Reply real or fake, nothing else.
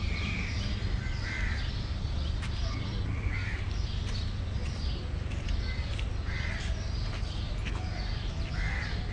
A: real